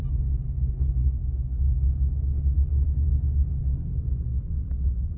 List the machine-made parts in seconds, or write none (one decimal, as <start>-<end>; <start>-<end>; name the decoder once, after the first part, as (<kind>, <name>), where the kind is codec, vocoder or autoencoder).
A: 1.0-2.7 (codec, HILCodec)